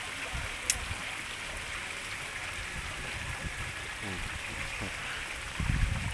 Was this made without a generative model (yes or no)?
yes